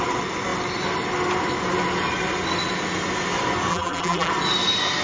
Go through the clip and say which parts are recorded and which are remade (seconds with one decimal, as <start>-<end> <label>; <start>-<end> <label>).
0.0-3.7 recorded; 3.7-4.3 remade; 4.3-5.0 recorded